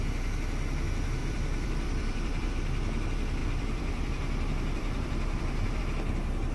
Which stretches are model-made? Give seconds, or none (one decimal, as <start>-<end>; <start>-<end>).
1.2-2.5; 3.4-5.8